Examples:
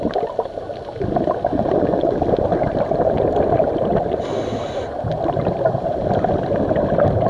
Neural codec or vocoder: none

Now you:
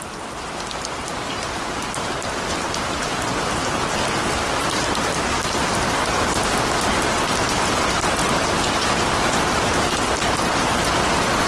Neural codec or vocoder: none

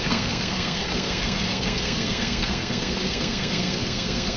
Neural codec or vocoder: codec, SNAC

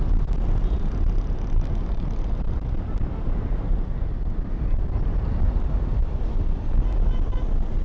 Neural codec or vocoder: none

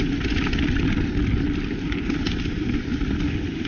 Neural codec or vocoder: none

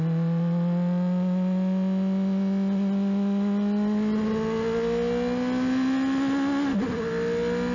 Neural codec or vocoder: none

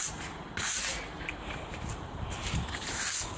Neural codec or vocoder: vocoder, BigVGAN v2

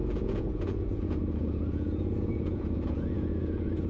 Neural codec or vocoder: vocoder, Vocos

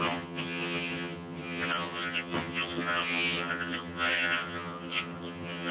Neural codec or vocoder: vocoder, HiFi-GAN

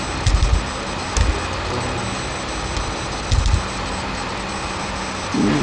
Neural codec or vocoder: none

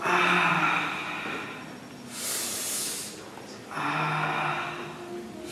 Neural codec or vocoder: none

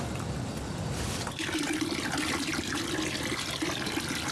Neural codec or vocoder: none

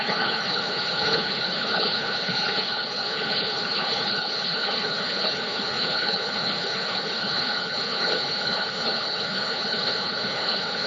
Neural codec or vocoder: codec, HILCodec